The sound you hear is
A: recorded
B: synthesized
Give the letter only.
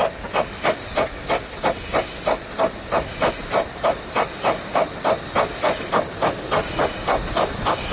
A